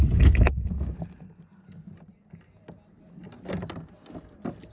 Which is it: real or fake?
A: real